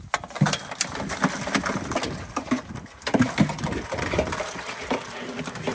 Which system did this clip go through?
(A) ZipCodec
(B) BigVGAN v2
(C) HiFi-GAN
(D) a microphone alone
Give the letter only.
D